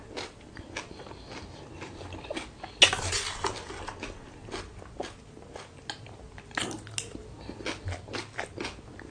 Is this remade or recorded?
recorded